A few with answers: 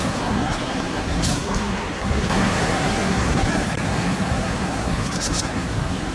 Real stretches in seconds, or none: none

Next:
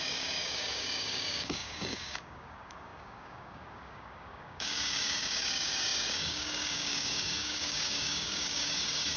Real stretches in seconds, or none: none

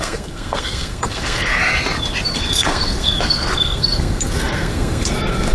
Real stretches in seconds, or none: 1.5-2.3

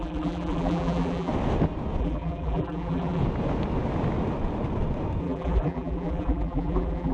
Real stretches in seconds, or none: 1.3-2.0; 3.2-5.2

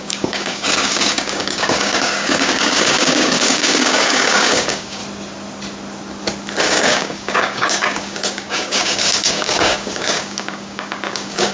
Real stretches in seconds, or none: 5.0-6.6

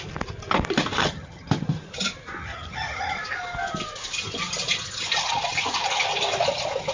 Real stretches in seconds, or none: 0.0-1.0; 1.5-2.4; 3.2-6.9

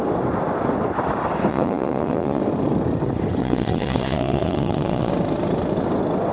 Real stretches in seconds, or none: 0.0-1.5; 2.4-3.4; 5.1-6.3

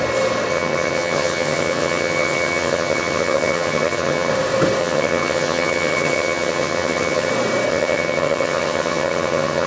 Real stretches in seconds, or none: 0.0-0.5; 4.3-4.8; 7.3-7.7